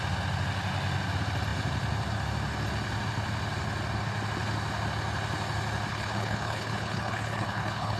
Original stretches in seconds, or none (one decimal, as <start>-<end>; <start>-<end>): 0.0-5.9